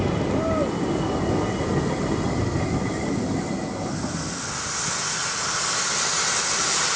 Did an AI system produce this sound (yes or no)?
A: no